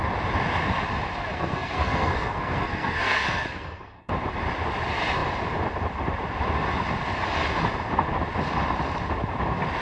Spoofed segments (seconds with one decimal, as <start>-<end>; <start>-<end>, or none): 1.3-4.1